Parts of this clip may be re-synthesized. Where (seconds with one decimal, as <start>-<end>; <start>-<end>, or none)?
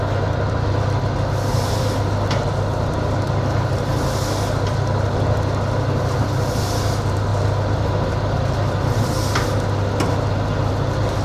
none